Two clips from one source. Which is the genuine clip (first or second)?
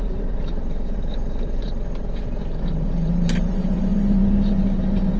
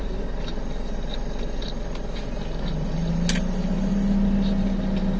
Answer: second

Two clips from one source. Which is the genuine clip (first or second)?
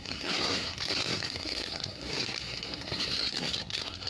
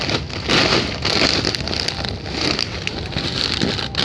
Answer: second